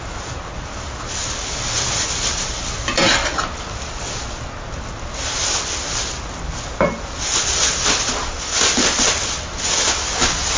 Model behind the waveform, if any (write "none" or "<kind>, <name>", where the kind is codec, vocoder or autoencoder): none